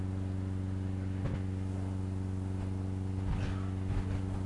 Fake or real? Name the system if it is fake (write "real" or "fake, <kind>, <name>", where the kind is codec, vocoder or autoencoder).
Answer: real